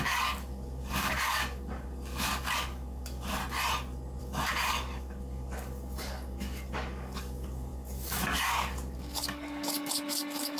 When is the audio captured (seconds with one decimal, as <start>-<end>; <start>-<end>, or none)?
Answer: 3.4-4.2